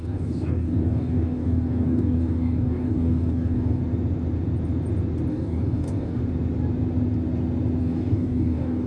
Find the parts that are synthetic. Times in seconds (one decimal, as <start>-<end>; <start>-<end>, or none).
0.0-3.8; 5.3-6.2; 7.8-8.9